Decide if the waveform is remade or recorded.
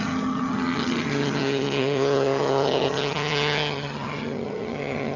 remade